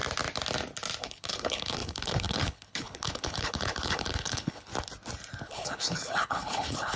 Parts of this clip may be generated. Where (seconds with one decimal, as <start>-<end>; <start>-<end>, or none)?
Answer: 1.0-4.7; 5.4-7.0